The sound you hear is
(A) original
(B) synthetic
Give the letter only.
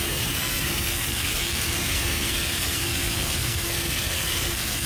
B